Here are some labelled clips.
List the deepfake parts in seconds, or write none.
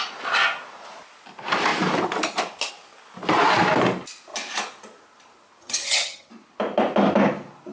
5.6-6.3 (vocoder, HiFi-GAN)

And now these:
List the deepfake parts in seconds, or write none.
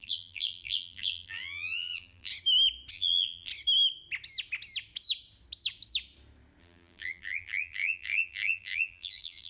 0.0-2.3 (vocoder, BigVGAN v2); 2.9-3.5; 6.6-9.5